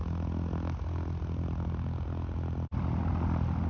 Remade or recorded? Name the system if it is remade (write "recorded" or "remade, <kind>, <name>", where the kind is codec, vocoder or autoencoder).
recorded